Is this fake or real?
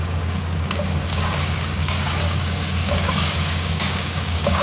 fake